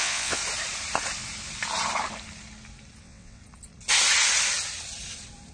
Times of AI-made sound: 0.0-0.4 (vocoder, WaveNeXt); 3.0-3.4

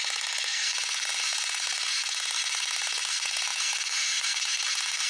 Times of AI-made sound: 0.0-5.1 (codec, SNAC)

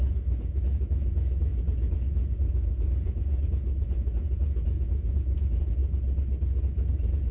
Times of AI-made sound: 0.0-5.8 (vocoder, Vocos); 6.6-7.3